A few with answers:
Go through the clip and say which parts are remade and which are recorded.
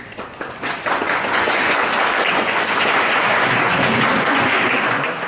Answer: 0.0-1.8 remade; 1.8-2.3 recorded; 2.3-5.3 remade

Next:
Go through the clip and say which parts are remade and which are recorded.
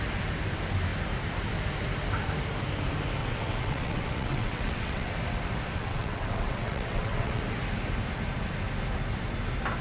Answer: 0.0-3.2 recorded; 3.2-5.1 remade; 5.1-5.8 recorded; 5.8-7.4 remade; 7.4-9.8 recorded